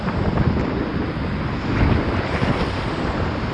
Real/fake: real